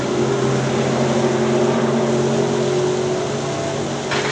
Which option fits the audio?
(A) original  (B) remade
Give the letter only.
A